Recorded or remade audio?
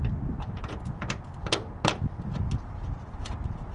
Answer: recorded